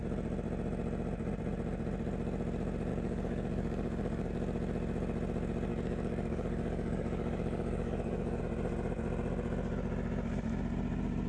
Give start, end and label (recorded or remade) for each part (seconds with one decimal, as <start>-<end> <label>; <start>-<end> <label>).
0.0-2.9 recorded; 2.9-4.3 remade; 4.3-5.7 recorded; 5.7-8.4 remade; 8.4-11.3 recorded

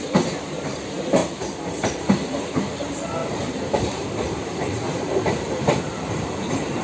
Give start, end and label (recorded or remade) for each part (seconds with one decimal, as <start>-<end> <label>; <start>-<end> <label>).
0.0-1.2 remade; 1.2-1.7 recorded; 1.7-6.8 remade

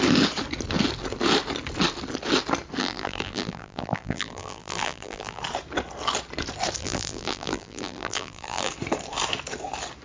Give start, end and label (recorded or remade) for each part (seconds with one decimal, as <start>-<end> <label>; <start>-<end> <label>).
0.0-2.8 recorded; 2.8-5.4 remade; 5.4-6.8 recorded; 6.8-8.7 remade; 8.7-10.0 recorded

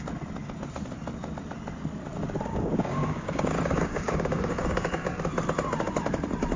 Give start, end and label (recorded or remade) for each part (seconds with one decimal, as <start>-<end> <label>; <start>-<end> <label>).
0.0-2.5 recorded; 2.5-5.2 remade; 5.2-6.6 recorded

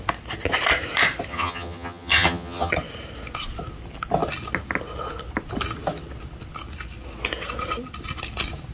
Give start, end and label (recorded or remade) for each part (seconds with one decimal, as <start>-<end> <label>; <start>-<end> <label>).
0.0-1.3 recorded; 1.3-2.7 remade; 2.7-8.7 recorded

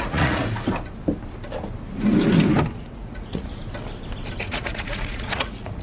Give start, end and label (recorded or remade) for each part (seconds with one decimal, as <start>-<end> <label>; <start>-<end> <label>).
0.0-0.4 remade; 0.4-2.9 recorded; 2.9-3.6 remade; 3.6-4.4 recorded; 4.4-5.8 remade

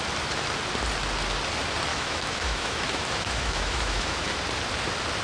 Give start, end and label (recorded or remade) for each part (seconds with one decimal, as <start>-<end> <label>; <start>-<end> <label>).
0.0-1.9 recorded; 1.9-4.3 remade; 4.3-5.2 recorded

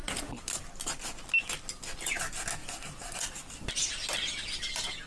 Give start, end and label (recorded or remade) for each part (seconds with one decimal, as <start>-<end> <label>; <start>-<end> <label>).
0.0-5.1 recorded